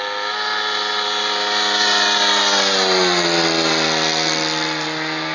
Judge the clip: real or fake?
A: real